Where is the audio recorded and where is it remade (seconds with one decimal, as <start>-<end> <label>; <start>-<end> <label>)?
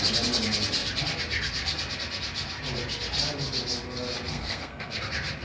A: 0.0-4.3 recorded; 4.3-5.0 remade; 5.0-5.4 recorded